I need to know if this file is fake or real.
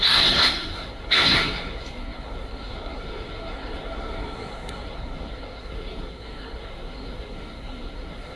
fake